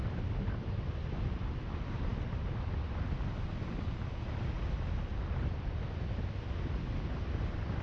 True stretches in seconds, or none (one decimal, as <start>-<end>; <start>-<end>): 0.0-7.8